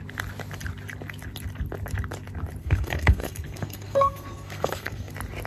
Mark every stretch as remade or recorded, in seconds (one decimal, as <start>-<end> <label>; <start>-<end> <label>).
0.0-2.6 recorded; 2.6-5.1 remade; 5.1-5.5 recorded